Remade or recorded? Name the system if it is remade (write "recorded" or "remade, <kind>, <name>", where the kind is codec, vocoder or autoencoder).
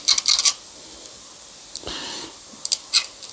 recorded